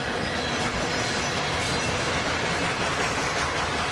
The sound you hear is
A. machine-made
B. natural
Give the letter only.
B